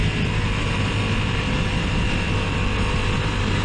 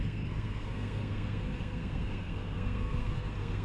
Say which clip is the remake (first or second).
second